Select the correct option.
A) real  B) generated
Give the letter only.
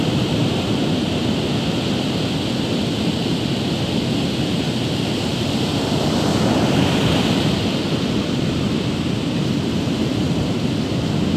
A